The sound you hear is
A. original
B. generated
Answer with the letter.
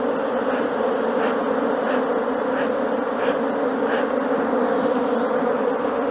A